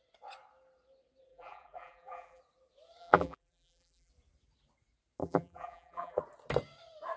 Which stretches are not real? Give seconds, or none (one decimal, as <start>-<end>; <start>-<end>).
1.3-2.4; 3.0-4.1; 5.2-6.2